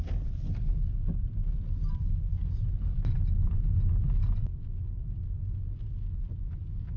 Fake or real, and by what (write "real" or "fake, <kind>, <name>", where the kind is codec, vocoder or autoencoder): real